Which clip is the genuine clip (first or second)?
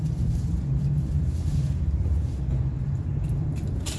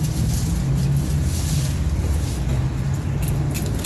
second